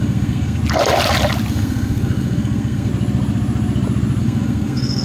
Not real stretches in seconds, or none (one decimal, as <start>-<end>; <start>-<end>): 0.0-0.6; 1.5-2.9; 4.2-5.0